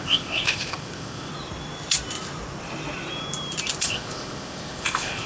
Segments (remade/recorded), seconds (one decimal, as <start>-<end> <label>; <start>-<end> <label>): 0.0-1.3 remade; 1.3-3.8 recorded; 3.8-5.3 remade